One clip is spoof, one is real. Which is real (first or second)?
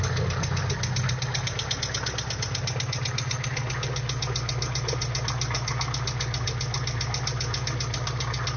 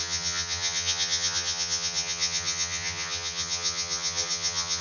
first